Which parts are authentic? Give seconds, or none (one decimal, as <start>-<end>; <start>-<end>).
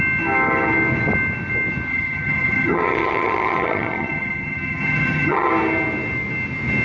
0.0-1.9; 5.5-6.8